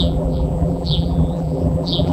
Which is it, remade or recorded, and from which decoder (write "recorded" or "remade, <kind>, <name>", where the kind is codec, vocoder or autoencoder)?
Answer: remade, vocoder, BigVGAN v2